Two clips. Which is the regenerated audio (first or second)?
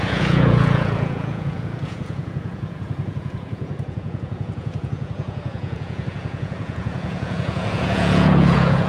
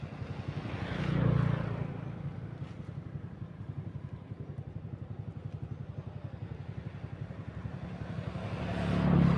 first